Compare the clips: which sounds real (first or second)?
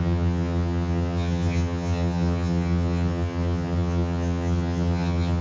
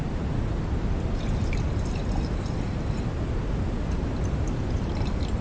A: second